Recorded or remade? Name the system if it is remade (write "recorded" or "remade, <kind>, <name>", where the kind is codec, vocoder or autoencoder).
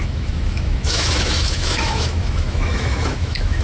remade, autoencoder, DAC-VAE